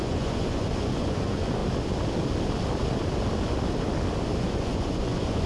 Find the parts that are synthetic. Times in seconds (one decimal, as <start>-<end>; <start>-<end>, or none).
0.0-1.6; 4.4-5.5